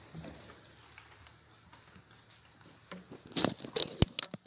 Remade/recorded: recorded